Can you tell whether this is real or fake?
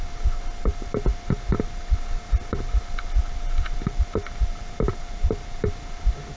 real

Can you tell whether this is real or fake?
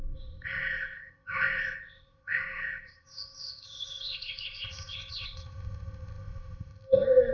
fake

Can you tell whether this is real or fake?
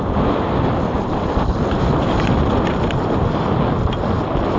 real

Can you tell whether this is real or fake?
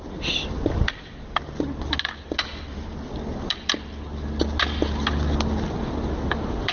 real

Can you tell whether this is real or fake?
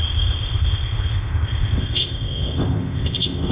fake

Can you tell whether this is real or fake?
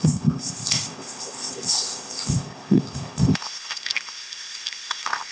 fake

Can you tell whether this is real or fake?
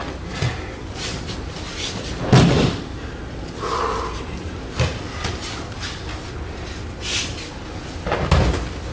real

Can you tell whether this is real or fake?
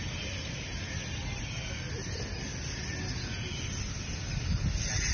real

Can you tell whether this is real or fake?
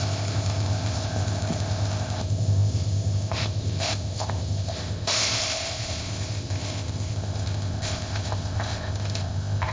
fake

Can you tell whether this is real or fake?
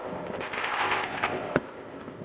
fake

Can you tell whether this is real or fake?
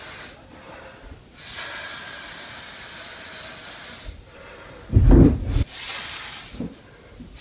real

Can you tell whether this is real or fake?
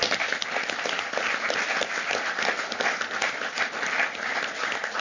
real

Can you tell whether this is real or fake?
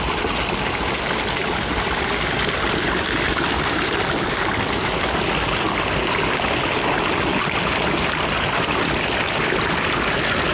real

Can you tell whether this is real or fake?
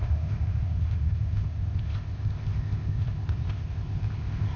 fake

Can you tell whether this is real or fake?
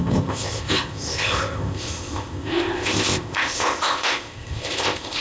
fake